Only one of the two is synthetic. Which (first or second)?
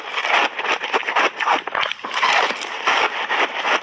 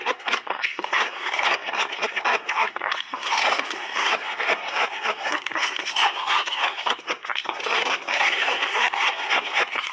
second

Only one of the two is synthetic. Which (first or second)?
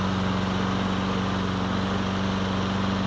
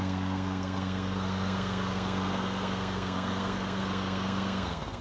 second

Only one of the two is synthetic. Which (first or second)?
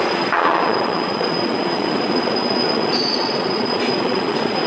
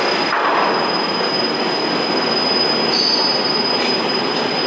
first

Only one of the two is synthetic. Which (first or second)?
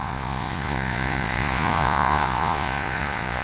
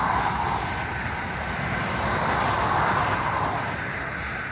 first